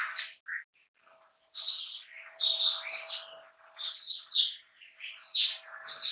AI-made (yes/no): no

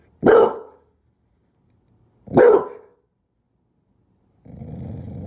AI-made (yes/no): no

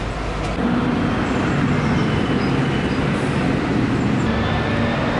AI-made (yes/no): no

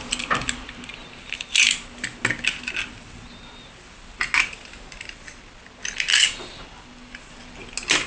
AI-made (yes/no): no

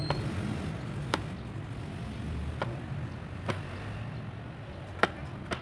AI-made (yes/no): no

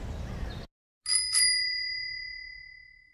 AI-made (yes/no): no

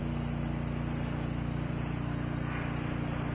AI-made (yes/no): no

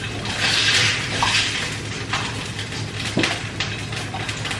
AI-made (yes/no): no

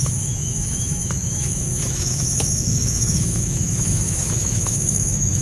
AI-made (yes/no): yes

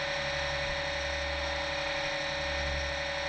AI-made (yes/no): no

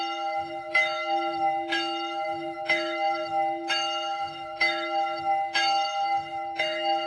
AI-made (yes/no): yes